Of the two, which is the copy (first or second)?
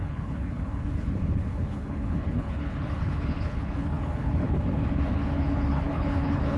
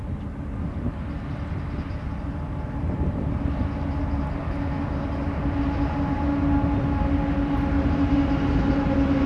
first